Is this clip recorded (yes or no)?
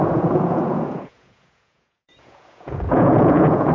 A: no